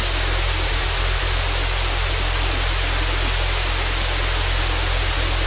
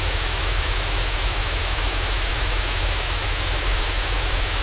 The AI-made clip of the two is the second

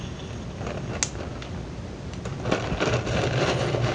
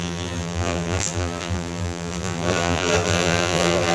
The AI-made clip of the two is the second